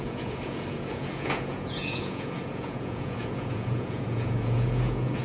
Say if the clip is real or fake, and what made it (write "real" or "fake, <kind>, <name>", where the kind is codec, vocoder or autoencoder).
fake, vocoder, Vocos